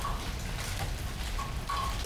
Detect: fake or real real